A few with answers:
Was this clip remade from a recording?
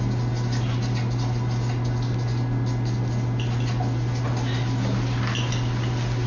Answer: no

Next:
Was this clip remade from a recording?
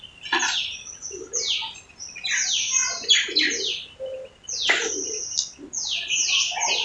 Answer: no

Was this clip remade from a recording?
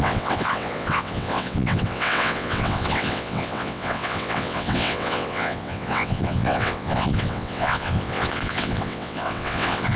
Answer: yes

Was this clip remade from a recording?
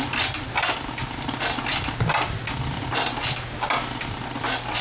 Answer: no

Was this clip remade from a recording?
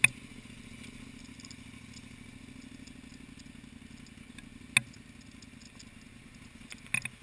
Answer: no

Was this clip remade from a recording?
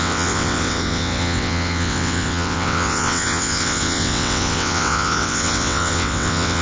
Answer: yes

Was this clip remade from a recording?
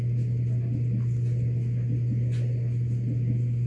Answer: no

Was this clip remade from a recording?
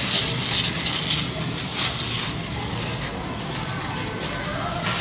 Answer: no